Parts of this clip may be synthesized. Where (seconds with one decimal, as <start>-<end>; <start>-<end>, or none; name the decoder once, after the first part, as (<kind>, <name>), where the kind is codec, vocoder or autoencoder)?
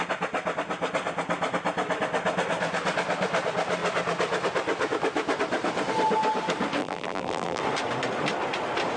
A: 6.8-7.6 (vocoder, BigVGAN v2)